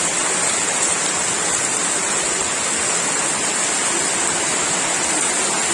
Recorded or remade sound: recorded